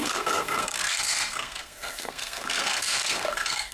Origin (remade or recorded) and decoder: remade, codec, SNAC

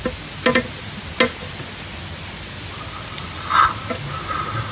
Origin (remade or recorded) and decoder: recorded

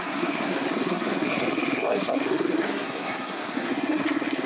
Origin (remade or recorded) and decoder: remade, codec, SNAC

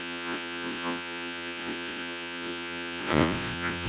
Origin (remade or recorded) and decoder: remade, vocoder, Vocos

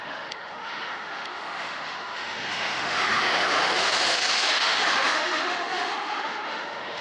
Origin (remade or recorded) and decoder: remade, autoencoder, DAC-VAE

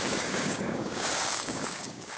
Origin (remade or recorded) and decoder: remade, codec, DAC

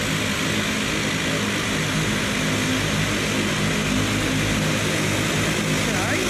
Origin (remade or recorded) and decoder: recorded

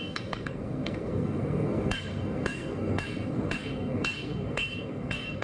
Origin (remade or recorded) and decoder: remade, codec, SNAC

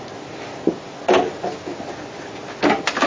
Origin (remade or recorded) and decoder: recorded